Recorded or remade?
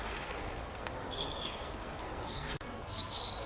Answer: remade